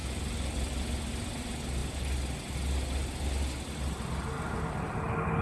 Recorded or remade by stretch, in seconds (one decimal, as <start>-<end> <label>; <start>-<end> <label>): 0.0-5.4 recorded